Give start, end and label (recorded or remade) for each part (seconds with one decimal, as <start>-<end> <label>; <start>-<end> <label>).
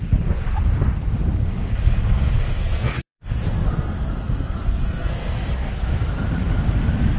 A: 0.0-1.4 recorded; 1.4-5.7 remade; 5.7-7.2 recorded